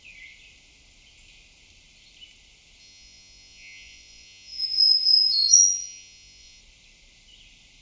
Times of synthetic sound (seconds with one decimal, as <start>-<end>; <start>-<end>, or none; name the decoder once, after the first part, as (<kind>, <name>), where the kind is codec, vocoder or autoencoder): 2.8-6.6 (vocoder, Vocos)